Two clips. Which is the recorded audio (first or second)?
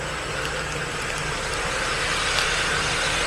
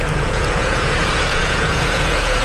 first